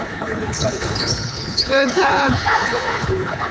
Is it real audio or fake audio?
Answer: fake